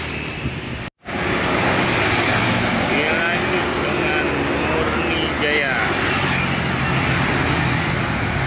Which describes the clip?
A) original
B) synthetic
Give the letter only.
A